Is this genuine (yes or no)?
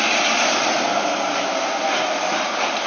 yes